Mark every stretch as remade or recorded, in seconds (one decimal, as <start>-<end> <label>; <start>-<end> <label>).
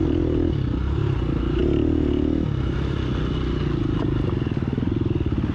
0.0-5.5 recorded